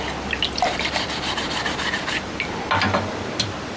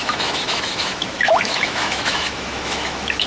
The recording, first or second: first